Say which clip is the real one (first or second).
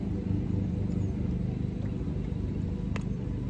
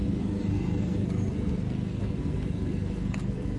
first